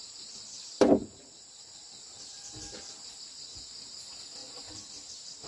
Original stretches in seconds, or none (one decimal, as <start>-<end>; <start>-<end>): 0.0-5.5